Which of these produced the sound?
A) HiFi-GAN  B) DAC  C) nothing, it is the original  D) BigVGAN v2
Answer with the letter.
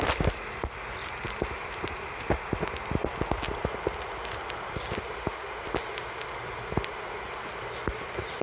C